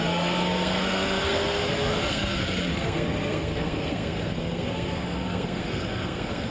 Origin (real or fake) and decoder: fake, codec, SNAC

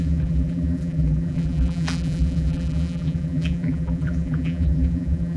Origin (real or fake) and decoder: fake, vocoder, BigVGAN v2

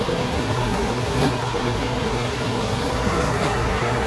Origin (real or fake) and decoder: fake, codec, SNAC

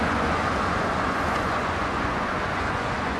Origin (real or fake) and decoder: fake, vocoder, Vocos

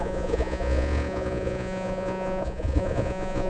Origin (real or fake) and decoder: fake, vocoder, Vocos